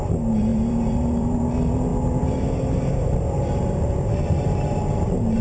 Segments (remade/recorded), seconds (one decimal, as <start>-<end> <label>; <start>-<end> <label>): 0.0-5.4 remade